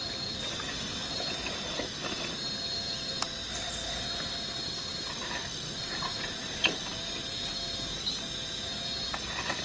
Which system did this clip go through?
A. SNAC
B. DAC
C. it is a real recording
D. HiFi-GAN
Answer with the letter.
C